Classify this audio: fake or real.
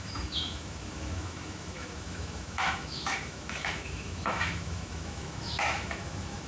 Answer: fake